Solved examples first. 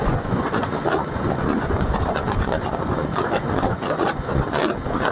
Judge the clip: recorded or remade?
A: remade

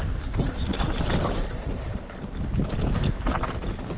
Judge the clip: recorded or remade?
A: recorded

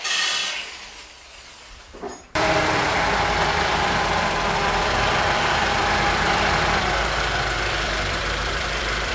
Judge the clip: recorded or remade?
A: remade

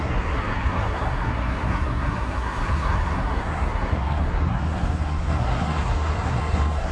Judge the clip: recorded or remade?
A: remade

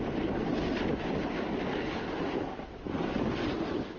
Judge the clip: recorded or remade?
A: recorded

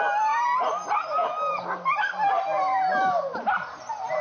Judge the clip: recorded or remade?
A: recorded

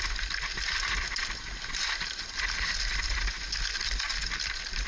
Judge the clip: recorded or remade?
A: recorded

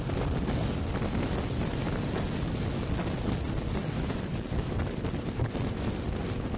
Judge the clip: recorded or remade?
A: recorded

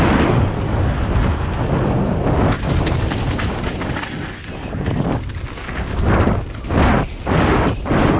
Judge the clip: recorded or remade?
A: recorded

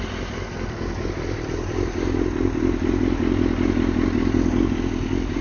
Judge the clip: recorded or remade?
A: recorded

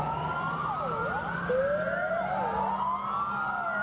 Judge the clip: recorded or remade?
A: recorded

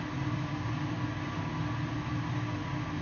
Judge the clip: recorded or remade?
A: recorded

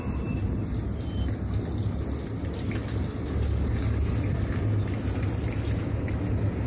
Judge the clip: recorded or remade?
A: recorded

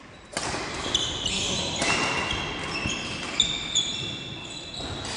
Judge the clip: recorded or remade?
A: recorded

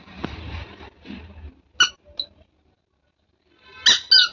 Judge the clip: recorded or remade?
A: recorded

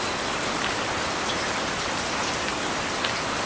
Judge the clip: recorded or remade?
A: recorded